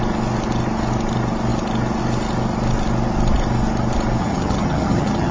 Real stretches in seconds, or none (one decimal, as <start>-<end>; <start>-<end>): 0.0-4.2